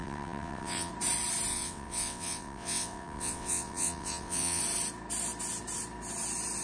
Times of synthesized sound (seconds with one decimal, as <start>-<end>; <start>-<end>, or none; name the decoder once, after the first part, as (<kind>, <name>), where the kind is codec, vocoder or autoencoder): 0.0-0.9 (vocoder, WaveNeXt); 1.5-4.6